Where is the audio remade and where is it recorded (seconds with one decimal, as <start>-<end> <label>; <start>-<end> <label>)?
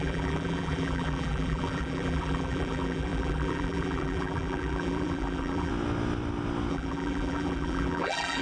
0.0-5.7 remade; 5.7-6.7 recorded; 6.7-8.4 remade